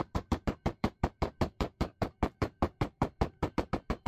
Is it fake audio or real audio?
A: fake